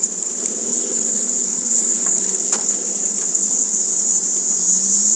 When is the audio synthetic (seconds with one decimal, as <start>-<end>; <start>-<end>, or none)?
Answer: 0.7-3.8